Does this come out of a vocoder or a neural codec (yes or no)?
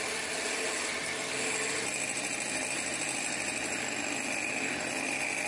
no